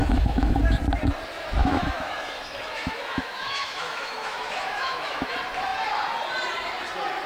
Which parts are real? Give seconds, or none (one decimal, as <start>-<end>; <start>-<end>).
0.6-1.6; 5.3-7.3